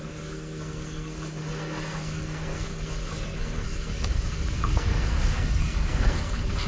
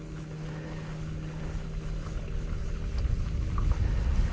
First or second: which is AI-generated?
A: first